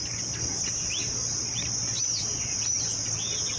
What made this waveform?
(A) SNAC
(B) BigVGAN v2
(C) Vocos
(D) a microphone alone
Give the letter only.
D